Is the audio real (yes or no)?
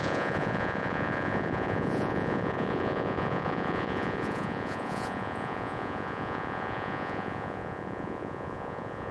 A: no